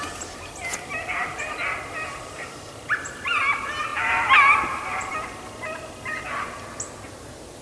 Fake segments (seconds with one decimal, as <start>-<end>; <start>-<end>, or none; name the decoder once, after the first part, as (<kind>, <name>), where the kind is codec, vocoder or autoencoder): none